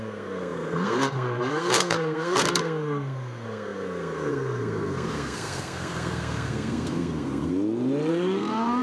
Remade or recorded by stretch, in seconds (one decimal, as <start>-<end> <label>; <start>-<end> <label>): 0.0-7.5 remade; 7.5-8.1 recorded; 8.1-8.8 remade